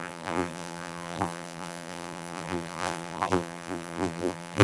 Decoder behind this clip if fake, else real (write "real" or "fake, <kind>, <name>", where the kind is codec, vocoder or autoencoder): fake, vocoder, BigVGAN v2